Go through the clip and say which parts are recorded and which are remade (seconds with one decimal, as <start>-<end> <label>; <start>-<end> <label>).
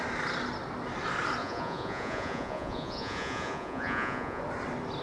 0.0-1.4 recorded; 1.4-4.4 remade; 4.4-5.0 recorded